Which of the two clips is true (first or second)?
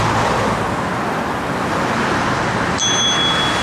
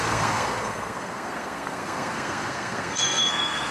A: first